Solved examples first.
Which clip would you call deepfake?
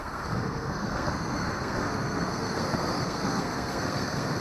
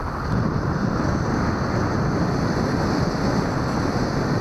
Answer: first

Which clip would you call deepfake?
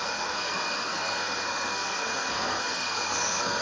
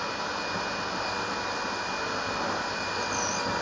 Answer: first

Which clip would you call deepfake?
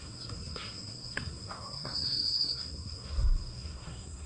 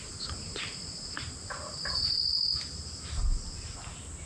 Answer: first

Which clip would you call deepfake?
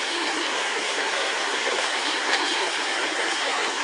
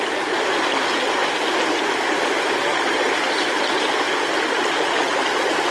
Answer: first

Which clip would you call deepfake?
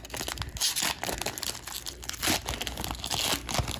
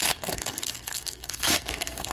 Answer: second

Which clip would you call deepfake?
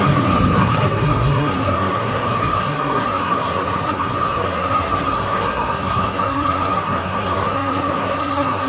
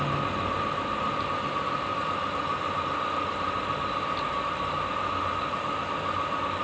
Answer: first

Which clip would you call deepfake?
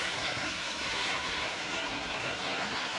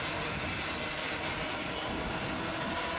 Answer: first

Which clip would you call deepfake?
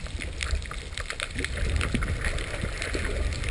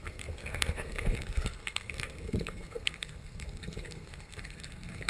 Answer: second